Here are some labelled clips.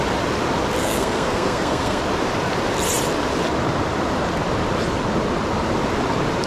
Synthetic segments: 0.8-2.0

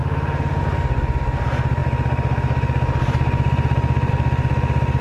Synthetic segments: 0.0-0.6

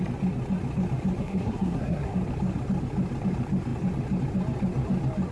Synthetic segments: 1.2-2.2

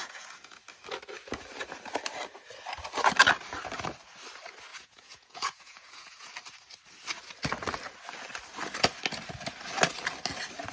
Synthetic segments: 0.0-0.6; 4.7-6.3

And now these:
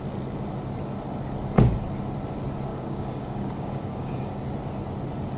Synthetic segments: 2.7-4.4

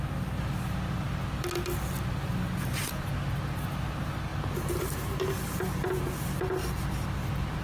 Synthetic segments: none

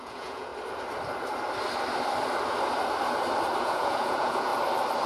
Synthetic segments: 0.0-0.5; 3.6-4.5

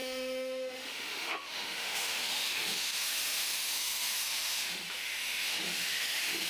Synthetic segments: 0.0-6.5